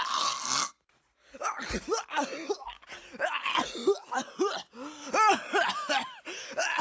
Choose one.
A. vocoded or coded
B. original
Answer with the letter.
B